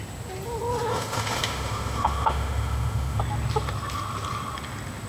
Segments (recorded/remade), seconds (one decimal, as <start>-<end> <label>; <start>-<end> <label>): 0.0-0.9 recorded; 0.9-3.2 remade; 3.2-5.1 recorded